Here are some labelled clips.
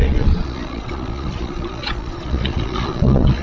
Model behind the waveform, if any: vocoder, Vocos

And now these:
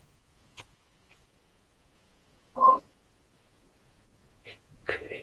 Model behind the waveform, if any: vocoder, Vocos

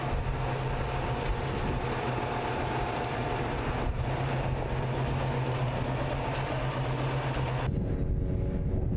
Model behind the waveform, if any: none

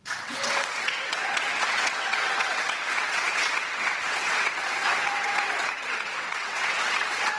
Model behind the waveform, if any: vocoder, WaveNeXt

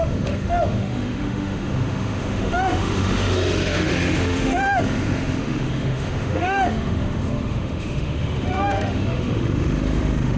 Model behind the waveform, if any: autoencoder, DAC-VAE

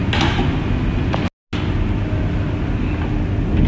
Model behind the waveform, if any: none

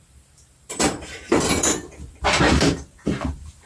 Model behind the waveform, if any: vocoder, BigVGAN v2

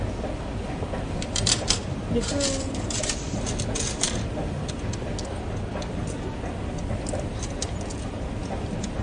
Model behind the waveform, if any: none